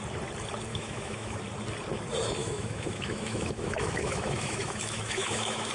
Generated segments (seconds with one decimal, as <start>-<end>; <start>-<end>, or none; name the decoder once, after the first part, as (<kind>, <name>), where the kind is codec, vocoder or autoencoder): 0.7-1.4 (autoencoder, DAC-VAE); 2.4-5.7